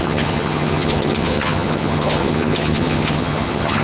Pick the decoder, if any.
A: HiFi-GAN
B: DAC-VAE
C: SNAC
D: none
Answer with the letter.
A